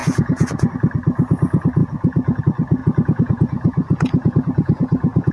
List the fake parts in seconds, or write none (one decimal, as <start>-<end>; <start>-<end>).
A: 0.0-0.7; 1.8-2.4; 2.8-5.3

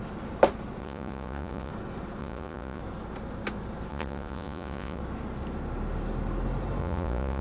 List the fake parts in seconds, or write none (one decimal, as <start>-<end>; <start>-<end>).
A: 0.8-1.7; 2.2-2.8; 3.9-5.0; 6.8-7.4

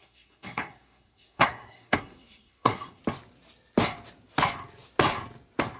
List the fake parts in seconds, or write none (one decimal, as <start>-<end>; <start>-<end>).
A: 0.0-3.0

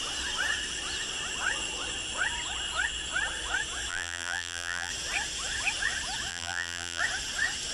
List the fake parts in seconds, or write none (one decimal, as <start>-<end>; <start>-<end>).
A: 3.9-4.9; 6.3-7.0

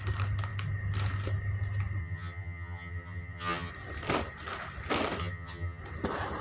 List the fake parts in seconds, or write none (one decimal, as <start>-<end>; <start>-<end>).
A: 2.0-3.7; 5.2-5.8

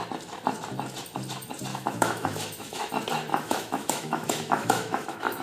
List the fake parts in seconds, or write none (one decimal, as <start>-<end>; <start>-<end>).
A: 1.7-2.9; 3.3-5.4

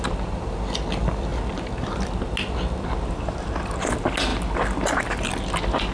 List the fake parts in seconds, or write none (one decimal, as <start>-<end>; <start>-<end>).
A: none

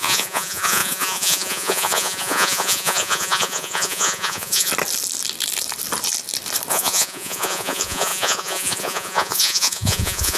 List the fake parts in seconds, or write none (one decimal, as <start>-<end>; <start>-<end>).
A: 0.0-4.7; 6.7-10.4